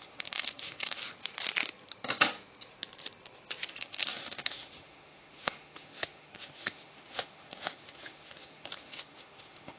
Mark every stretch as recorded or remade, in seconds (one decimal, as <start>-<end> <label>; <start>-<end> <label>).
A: 0.0-1.0 remade; 1.0-3.7 recorded; 3.7-9.8 remade